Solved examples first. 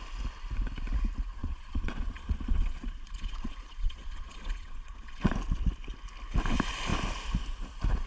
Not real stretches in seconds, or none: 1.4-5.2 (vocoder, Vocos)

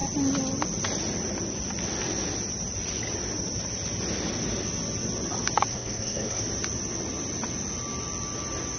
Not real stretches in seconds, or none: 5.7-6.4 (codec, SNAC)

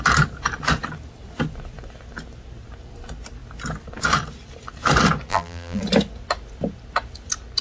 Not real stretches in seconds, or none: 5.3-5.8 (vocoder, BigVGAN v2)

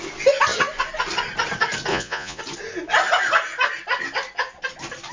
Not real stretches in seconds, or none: 1.9-2.4 (vocoder, Vocos)

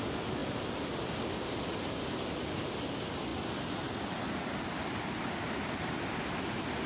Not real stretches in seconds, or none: none

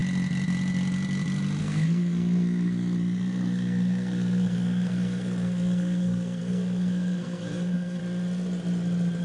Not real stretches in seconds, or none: 1.6-8.0 (codec, SNAC)

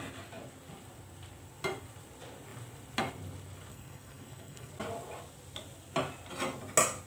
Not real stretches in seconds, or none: 3.7-4.7 (codec, SNAC)

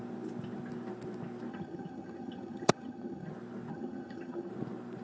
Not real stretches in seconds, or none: 1.5-3.3 (vocoder, HiFi-GAN); 3.7-4.5